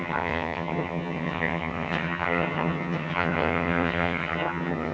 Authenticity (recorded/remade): remade